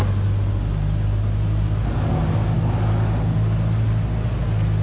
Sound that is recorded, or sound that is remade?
recorded